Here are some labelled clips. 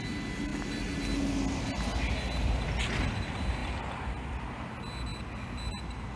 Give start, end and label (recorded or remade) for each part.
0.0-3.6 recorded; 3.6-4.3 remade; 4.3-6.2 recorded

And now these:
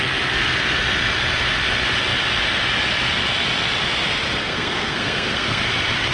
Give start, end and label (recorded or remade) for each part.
0.0-4.4 recorded; 4.4-5.6 remade; 5.6-6.1 recorded

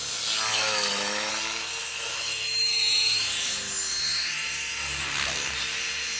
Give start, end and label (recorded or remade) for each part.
0.0-0.5 recorded; 0.5-1.3 remade; 1.3-1.8 recorded; 1.8-3.2 remade; 3.2-6.2 recorded

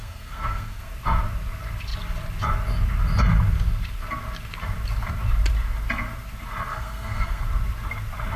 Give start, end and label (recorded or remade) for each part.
0.0-0.9 remade; 0.9-6.7 recorded; 6.7-7.4 remade; 7.4-8.4 recorded

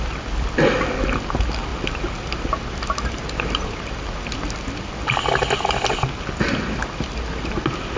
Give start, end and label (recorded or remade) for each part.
0.0-8.0 recorded